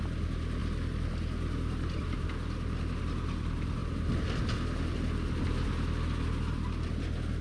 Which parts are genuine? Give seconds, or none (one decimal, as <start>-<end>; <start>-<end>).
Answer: 0.0-7.4